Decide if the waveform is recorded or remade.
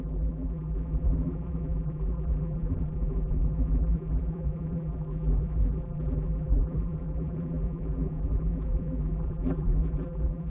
remade